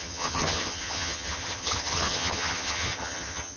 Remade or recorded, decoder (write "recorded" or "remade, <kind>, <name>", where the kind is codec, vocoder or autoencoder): remade, vocoder, HiFi-GAN